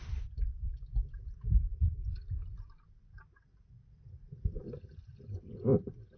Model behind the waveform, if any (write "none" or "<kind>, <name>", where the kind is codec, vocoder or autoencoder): vocoder, BigVGAN v2